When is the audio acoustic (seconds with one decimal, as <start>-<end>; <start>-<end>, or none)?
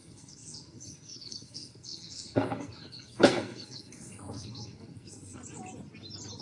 5.4-6.4